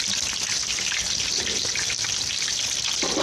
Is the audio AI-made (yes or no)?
no